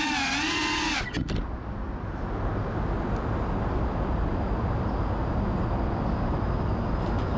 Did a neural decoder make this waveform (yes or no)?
no